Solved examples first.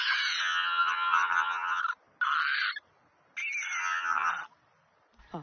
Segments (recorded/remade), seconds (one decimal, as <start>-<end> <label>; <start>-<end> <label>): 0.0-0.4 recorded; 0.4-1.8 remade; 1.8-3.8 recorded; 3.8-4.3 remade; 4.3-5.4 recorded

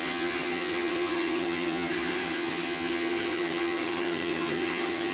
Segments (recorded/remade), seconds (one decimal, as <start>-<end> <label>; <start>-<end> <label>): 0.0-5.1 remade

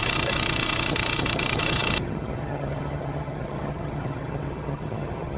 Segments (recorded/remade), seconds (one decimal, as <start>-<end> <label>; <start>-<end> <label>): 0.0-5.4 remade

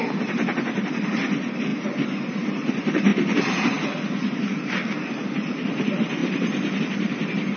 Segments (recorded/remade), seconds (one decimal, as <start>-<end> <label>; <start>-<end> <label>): 0.0-7.6 recorded

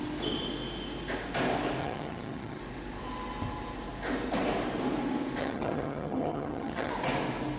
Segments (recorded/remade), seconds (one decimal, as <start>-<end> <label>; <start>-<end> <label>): 0.0-1.8 recorded; 1.8-2.6 remade; 2.6-5.4 recorded; 5.4-6.9 remade; 6.9-7.6 recorded

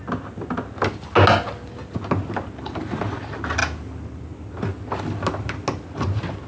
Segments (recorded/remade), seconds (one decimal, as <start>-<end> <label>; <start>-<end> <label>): 0.0-6.5 recorded

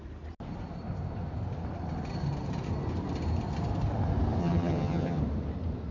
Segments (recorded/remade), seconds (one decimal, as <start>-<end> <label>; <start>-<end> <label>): 0.0-4.4 recorded; 4.4-5.2 remade; 5.2-5.9 recorded

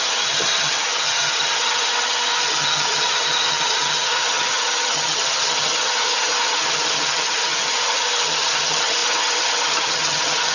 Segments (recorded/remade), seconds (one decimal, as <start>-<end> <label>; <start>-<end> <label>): 0.0-10.5 remade